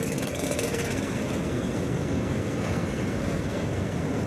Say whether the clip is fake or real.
fake